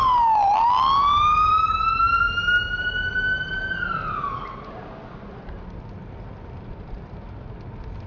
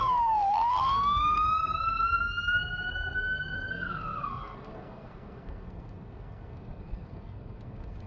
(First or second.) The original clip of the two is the first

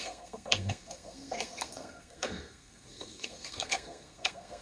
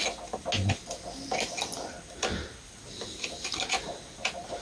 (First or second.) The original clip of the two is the second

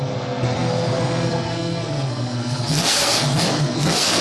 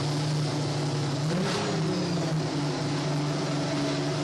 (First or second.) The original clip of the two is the second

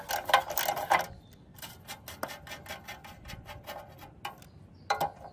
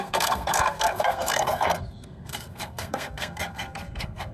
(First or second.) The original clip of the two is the first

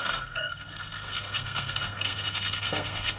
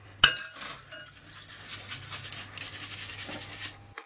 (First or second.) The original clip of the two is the second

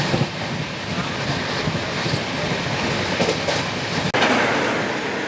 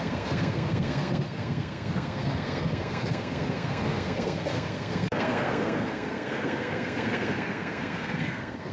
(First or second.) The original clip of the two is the first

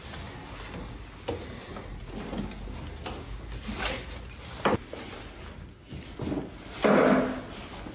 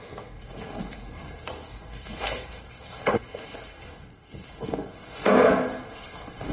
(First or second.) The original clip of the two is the first